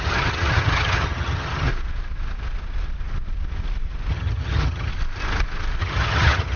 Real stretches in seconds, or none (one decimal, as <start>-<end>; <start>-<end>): 1.7-4.1; 4.9-5.8